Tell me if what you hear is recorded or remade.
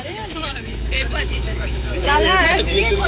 remade